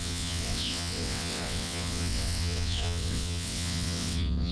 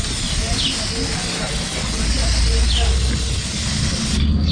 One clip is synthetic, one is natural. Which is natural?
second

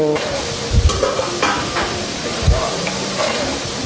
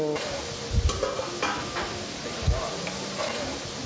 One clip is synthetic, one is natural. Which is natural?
second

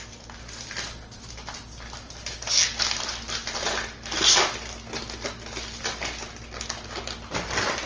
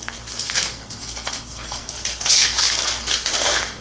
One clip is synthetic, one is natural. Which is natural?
first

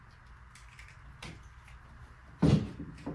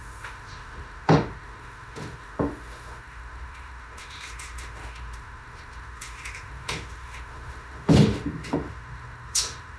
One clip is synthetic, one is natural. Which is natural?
first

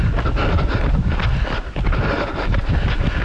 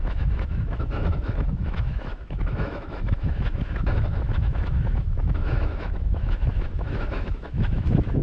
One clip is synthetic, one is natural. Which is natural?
first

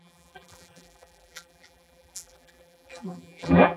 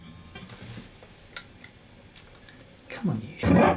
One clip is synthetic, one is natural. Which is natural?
second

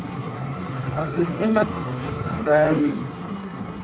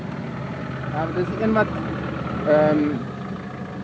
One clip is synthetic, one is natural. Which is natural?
second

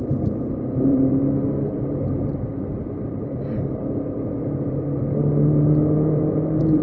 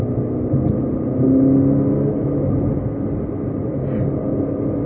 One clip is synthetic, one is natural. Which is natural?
second